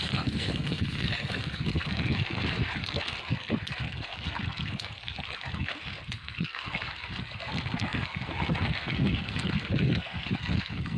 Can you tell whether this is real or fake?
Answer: fake